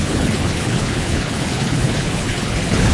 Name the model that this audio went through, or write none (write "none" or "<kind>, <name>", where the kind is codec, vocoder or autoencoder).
codec, HILCodec